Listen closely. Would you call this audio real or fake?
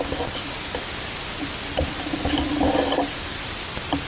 real